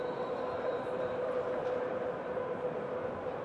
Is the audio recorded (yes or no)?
no